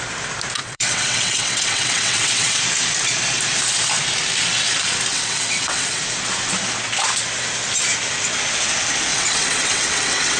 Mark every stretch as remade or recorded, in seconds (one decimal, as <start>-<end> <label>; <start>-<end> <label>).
0.0-0.6 recorded; 0.6-2.6 remade; 2.6-5.1 recorded; 5.1-6.0 remade; 6.0-9.1 recorded; 9.1-10.4 remade